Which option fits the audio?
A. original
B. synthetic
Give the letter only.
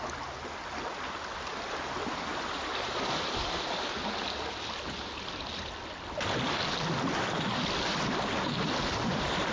A